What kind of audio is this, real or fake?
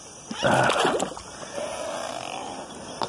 real